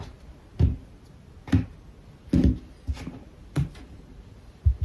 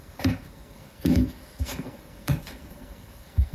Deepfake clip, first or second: second